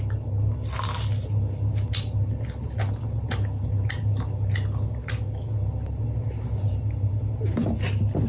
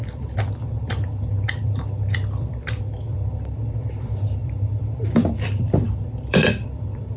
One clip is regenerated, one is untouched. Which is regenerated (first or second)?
second